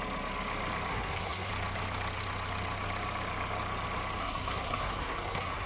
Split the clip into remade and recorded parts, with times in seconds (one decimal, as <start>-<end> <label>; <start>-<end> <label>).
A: 0.0-0.9 recorded; 0.9-1.5 remade; 1.5-4.2 recorded; 4.2-5.7 remade